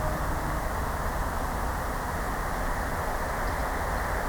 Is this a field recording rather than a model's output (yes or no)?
yes